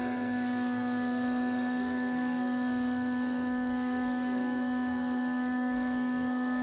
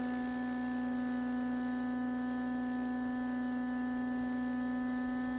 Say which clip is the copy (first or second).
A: first